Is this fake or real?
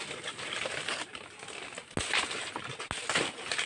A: real